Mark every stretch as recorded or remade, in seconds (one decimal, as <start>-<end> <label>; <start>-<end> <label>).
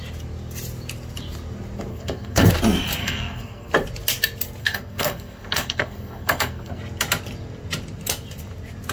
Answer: 0.0-1.9 recorded; 1.9-2.5 remade; 2.5-3.0 recorded; 3.0-3.7 remade; 3.7-4.6 recorded; 4.6-6.8 remade; 6.8-8.9 recorded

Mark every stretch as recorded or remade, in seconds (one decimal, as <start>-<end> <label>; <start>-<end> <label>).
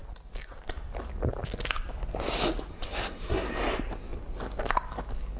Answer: 0.0-2.7 recorded; 2.7-3.5 remade; 3.5-5.4 recorded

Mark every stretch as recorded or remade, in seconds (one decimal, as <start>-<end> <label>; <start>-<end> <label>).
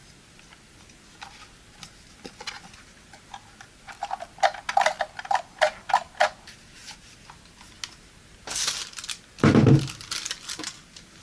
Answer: 0.0-11.2 recorded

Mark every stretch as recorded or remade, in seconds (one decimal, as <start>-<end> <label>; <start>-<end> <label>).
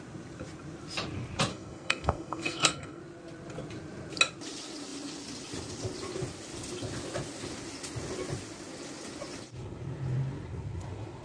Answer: 0.0-1.5 recorded; 1.5-3.0 remade; 3.0-11.2 recorded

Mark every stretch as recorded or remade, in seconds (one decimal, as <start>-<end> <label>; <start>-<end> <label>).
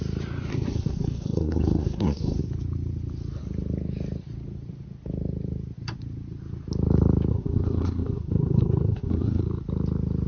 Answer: 0.0-0.5 recorded; 0.5-2.4 remade; 2.4-7.3 recorded; 7.3-9.4 remade; 9.4-10.3 recorded